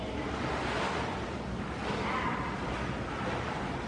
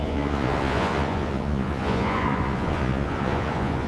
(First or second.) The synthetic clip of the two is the second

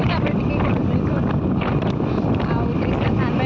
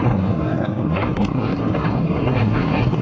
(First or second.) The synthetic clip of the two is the second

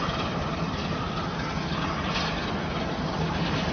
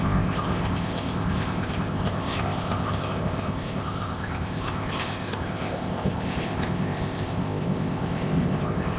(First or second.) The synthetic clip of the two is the second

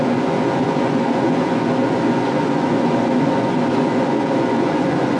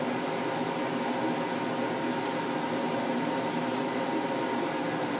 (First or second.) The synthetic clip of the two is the first